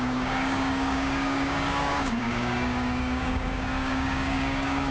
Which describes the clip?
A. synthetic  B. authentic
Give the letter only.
A